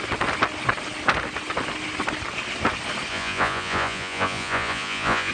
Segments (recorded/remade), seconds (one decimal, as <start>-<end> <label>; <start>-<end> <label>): 0.0-3.1 recorded; 3.1-5.3 remade